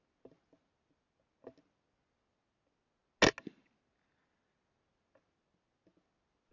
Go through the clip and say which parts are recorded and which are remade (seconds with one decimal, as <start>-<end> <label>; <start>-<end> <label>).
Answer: 0.0-6.5 recorded